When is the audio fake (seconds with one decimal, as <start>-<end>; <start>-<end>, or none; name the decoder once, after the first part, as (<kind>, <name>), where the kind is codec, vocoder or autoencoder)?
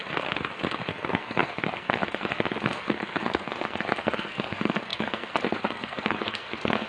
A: 0.0-6.9 (codec, SNAC)